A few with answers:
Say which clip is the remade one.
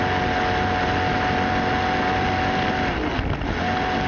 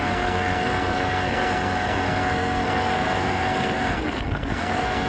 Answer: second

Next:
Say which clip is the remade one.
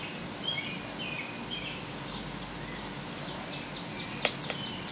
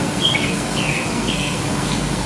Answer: second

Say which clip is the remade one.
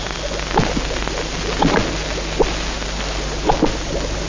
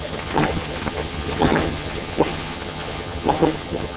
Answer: second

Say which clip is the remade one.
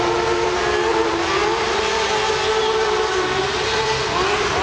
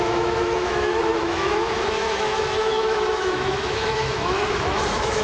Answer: second